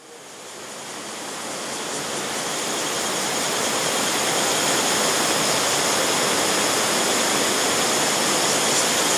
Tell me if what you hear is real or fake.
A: real